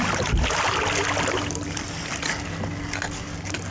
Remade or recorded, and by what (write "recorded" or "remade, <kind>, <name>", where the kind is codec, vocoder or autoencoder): recorded